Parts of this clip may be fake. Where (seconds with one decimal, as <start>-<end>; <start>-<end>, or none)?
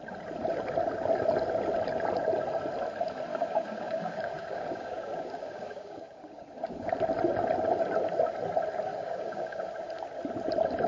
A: 3.3-6.9; 8.9-9.7